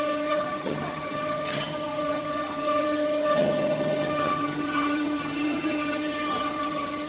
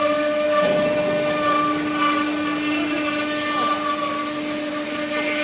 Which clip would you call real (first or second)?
second